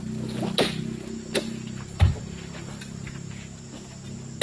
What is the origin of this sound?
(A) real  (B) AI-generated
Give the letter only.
A